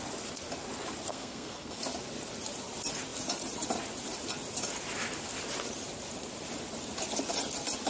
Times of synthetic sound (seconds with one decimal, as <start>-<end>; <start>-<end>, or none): 1.1-1.8